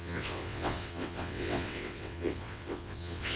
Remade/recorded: remade